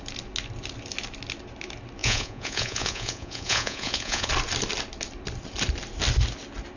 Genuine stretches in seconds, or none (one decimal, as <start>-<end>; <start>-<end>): 0.0-2.0; 4.3-6.8

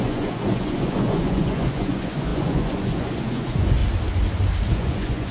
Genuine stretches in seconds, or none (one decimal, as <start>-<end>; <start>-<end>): 3.8-4.7

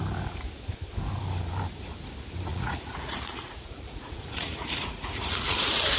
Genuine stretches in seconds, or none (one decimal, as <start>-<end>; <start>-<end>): 0.0-2.5

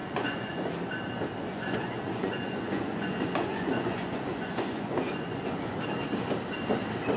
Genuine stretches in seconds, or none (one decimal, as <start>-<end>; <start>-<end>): 0.7-1.5; 5.8-7.2

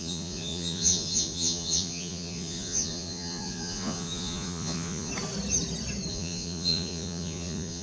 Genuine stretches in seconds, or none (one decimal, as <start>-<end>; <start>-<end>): 5.1-6.1

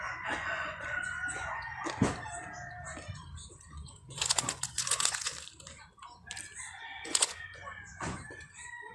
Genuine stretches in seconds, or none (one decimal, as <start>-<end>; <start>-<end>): 1.7-3.7; 5.3-6.6

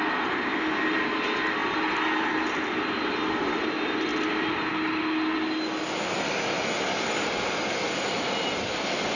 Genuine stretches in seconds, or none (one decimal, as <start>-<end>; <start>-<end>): 0.0-9.2

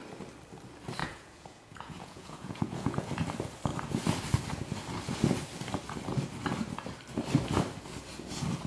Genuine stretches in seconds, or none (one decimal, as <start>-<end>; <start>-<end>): 0.0-1.0; 3.1-8.7